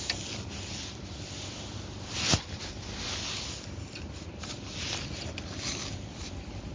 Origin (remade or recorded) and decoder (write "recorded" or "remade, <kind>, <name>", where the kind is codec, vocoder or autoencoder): recorded